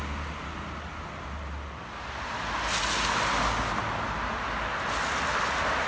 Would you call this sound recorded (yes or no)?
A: yes